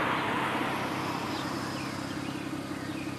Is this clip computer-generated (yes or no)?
no